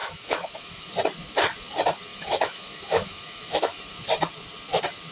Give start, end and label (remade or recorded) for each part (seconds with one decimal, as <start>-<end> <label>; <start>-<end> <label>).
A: 0.0-0.9 remade; 0.9-2.1 recorded; 2.1-3.8 remade; 3.8-5.1 recorded